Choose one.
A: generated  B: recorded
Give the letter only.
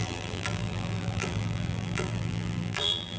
A